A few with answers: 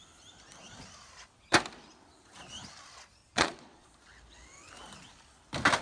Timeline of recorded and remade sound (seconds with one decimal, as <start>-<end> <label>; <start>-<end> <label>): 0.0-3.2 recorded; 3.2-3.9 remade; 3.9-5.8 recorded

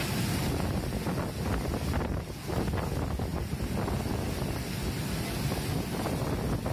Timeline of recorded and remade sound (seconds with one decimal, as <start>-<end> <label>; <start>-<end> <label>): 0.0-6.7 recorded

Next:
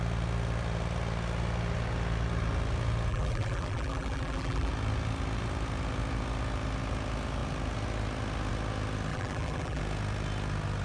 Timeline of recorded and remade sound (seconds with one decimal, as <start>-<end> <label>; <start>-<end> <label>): 0.0-3.1 recorded; 3.1-4.7 remade; 4.7-9.1 recorded; 9.1-9.8 remade; 9.8-10.8 recorded

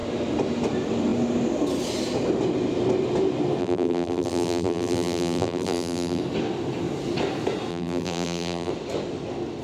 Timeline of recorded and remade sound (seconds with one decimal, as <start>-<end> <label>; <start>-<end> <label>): 0.0-3.6 recorded; 3.6-6.2 remade; 6.2-7.7 recorded; 7.7-8.7 remade; 8.7-9.6 recorded

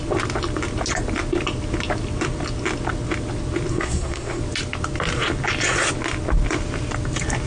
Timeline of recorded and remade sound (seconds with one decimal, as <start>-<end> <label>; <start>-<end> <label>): 0.0-3.7 recorded; 3.7-4.4 remade; 4.4-7.5 recorded

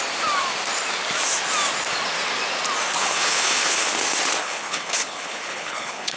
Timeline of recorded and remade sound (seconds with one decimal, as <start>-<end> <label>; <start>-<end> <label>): 0.0-3.0 recorded; 3.0-3.9 remade; 3.9-4.4 recorded; 4.4-6.2 remade

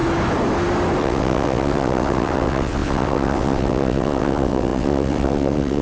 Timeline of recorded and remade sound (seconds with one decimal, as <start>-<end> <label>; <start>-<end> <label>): 0.0-1.0 recorded; 1.0-5.8 remade